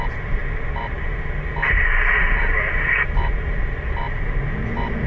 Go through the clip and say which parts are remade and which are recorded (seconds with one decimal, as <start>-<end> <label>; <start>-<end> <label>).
0.0-5.1 recorded